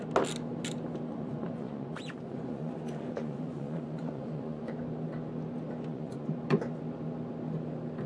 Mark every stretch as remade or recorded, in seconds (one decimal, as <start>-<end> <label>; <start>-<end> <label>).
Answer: 0.0-1.1 recorded; 1.1-4.7 remade; 4.7-5.9 recorded; 5.9-6.6 remade; 6.6-8.1 recorded